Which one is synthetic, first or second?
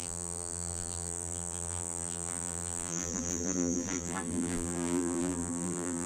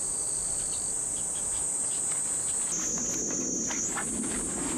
first